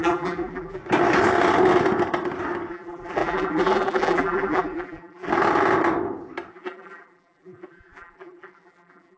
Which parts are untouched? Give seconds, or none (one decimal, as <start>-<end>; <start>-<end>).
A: 0.8-2.7; 5.3-6.5